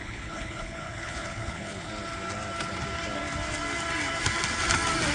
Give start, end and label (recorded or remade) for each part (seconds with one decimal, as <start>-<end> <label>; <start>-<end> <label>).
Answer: 0.0-1.9 remade; 1.9-5.1 recorded